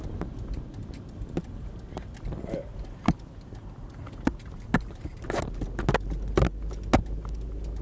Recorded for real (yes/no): yes